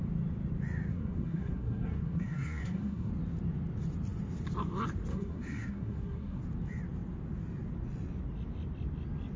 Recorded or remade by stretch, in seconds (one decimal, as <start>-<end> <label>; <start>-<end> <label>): 0.0-0.9 recorded; 0.9-3.1 remade; 3.1-5.1 recorded; 5.1-6.4 remade; 6.4-9.4 recorded